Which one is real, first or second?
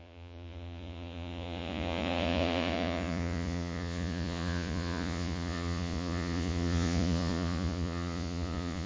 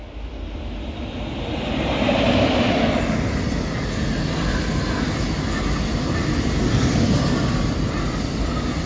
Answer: second